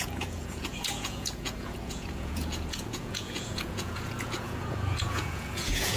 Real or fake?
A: fake